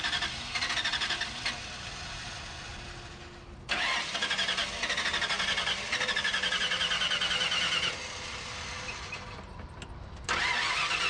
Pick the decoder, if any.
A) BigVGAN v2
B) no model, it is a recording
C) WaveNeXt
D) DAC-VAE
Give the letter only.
B